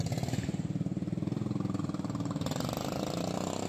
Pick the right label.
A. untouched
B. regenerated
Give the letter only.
A